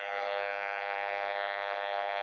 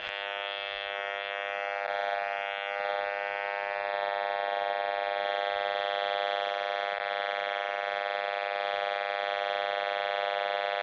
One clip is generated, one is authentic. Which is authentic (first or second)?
second